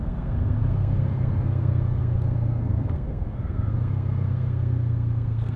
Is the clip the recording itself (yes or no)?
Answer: no